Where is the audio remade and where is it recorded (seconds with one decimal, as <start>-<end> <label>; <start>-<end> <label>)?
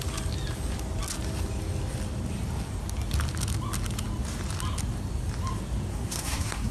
0.0-5.9 recorded; 5.9-6.7 remade